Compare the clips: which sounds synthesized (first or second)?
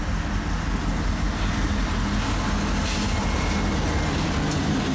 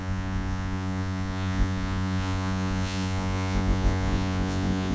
second